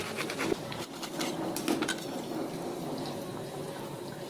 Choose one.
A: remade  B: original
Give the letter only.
B